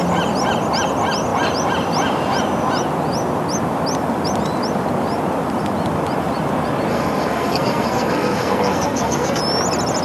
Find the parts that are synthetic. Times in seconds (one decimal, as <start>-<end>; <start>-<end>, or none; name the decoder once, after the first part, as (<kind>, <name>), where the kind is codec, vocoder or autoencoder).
6.9-9.4 (codec, SNAC)